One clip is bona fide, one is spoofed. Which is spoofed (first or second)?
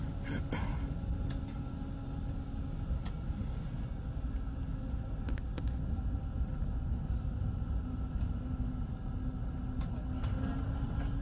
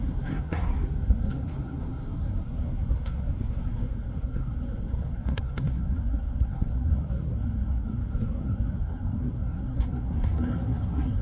second